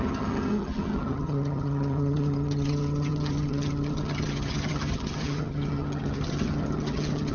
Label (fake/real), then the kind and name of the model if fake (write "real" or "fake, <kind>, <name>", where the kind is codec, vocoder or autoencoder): fake, vocoder, HiFi-GAN